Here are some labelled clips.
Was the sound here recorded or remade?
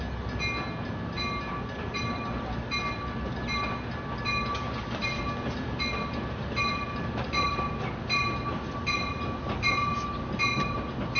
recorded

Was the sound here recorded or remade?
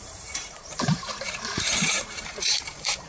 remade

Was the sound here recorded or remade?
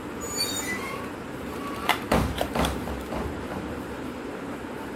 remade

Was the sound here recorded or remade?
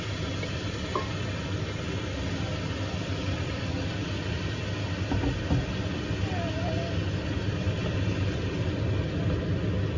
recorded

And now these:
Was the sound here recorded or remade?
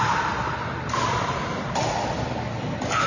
recorded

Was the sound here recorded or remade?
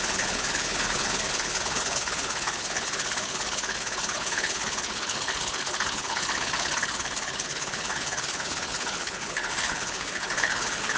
remade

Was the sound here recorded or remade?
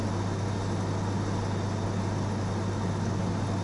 recorded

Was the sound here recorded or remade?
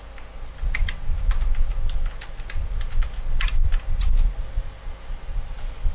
recorded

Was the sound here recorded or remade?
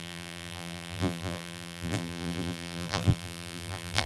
remade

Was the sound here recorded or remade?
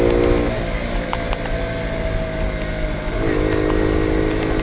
recorded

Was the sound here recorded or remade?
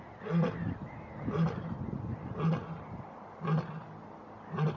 recorded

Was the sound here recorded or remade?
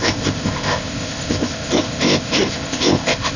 remade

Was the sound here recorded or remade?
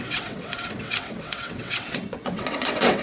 remade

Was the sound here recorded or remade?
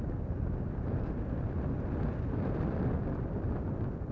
recorded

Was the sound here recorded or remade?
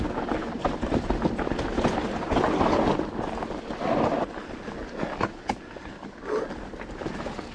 recorded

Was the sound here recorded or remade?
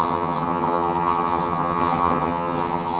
remade